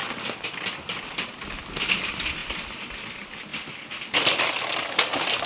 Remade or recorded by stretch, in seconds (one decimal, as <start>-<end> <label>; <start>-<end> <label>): 0.0-5.5 recorded